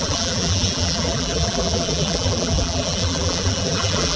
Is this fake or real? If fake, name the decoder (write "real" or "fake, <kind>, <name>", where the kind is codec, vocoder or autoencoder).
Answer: fake, vocoder, BigVGAN v2